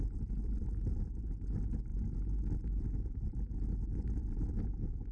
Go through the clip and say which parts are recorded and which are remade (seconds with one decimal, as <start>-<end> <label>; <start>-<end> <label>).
0.0-5.1 recorded